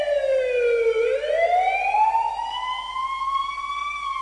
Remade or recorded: recorded